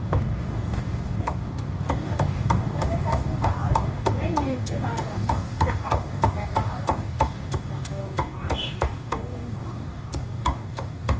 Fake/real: fake